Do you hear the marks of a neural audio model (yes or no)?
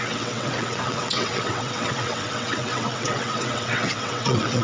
yes